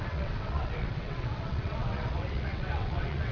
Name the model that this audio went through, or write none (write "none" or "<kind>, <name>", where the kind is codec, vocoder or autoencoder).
vocoder, WaveNeXt